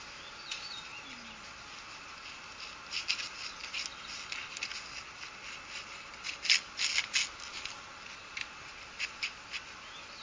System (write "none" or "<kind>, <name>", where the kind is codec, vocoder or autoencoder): none